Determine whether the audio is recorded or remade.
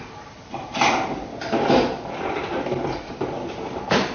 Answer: recorded